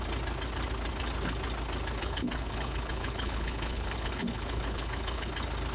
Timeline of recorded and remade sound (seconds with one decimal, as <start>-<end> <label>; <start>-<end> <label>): 0.0-2.0 recorded; 2.0-5.3 remade; 5.3-5.7 recorded